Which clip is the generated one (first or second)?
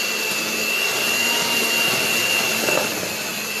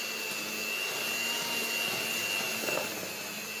first